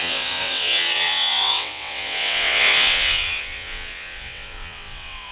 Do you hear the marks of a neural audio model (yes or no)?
yes